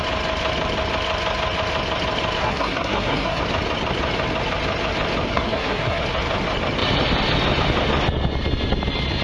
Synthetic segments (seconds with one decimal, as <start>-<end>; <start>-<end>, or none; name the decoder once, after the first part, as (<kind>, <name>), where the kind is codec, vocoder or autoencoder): 2.4-3.4 (codec, SNAC); 5.3-6.0